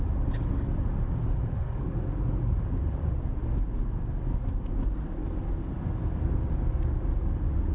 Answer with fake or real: real